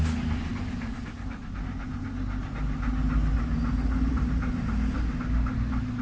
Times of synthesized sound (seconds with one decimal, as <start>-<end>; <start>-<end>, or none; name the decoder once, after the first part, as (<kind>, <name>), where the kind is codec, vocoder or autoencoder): none

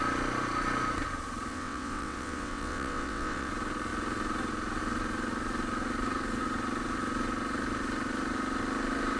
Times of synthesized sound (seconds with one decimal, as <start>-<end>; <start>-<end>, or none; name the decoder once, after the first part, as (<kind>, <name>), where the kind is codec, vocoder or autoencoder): 1.5-3.5 (vocoder, WaveNeXt)

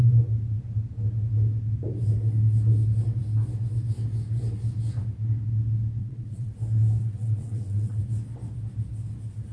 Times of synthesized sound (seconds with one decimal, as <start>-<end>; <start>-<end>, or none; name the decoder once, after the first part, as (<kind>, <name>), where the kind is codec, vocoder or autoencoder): 6.0-6.5 (vocoder, WaveNeXt); 7.0-8.0

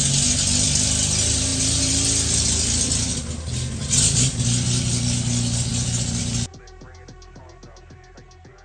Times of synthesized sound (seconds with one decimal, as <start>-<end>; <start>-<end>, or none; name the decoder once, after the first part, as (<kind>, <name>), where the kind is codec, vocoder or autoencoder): none

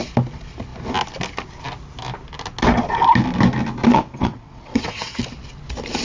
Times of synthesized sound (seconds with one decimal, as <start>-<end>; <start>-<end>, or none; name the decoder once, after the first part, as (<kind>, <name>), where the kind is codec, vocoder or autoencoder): 3.9-5.2 (vocoder, WaveNeXt)

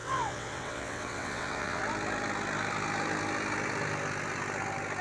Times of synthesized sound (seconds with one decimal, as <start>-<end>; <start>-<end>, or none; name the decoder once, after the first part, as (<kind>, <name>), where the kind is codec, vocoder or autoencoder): 0.0-1.8 (vocoder, WaveNeXt)

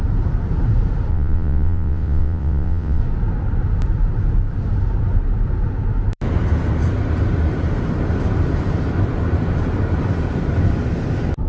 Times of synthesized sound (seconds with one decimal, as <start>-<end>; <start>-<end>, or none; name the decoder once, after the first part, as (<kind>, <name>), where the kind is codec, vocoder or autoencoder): 1.1-3.0 (vocoder, WaveNeXt)

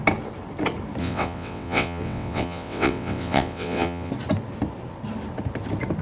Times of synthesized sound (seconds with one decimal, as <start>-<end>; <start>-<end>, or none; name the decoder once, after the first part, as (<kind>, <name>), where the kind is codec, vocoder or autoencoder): 1.0-4.1 (vocoder, WaveNeXt)